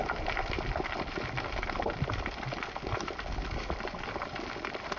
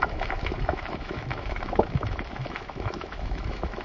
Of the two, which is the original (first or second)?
first